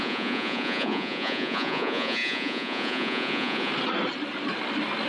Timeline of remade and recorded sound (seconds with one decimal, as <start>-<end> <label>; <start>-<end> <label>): 0.0-3.7 remade; 3.7-5.1 recorded